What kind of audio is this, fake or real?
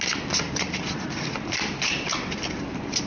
real